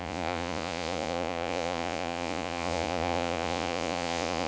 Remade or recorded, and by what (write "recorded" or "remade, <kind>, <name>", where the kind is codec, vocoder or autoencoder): remade, vocoder, Vocos